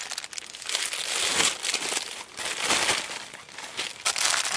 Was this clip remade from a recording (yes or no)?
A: no